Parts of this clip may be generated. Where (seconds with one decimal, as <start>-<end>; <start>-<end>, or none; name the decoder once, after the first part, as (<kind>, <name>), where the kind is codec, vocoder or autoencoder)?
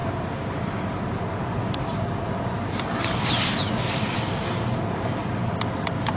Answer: none